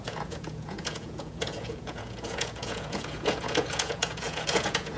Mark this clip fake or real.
fake